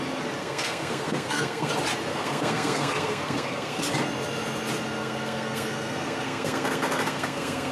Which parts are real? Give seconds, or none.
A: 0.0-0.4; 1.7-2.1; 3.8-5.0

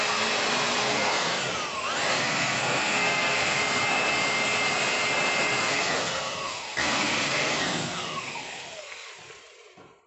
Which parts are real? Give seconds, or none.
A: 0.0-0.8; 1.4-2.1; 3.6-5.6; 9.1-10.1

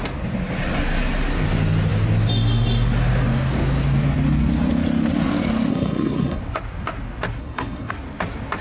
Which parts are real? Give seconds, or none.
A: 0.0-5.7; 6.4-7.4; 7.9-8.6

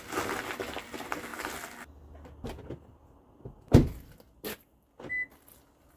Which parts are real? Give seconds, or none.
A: 0.0-6.0

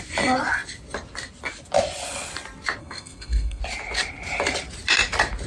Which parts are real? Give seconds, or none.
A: 0.0-2.8; 3.6-5.5

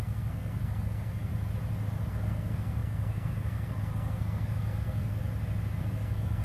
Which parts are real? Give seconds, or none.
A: 1.3-2.1; 5.2-5.8